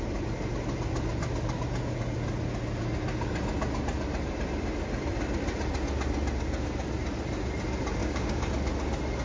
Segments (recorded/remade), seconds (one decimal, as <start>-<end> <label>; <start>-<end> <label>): 0.0-8.0 recorded; 8.0-8.5 remade; 8.5-9.2 recorded

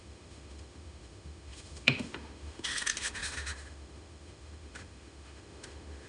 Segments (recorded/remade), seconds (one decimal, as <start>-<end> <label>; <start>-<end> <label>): 0.0-6.1 remade